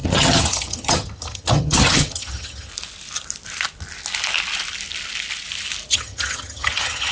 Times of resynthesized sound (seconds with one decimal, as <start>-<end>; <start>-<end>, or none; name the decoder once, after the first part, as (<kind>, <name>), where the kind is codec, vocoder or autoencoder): 0.0-2.7 (vocoder, HiFi-GAN); 5.9-7.1